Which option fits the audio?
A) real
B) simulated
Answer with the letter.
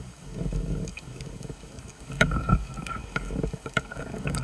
B